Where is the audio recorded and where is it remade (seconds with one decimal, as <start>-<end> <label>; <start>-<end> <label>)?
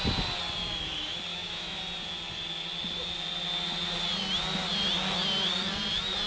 0.0-1.3 recorded; 1.3-1.8 remade; 1.8-6.3 recorded